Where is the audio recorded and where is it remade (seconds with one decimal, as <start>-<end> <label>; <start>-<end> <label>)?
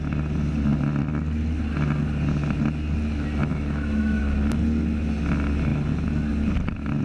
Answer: 0.0-3.5 recorded; 3.5-4.2 remade; 4.2-7.0 recorded